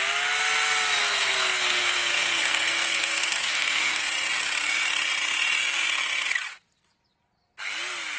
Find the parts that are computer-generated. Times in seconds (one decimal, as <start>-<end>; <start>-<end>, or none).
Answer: 1.0-4.0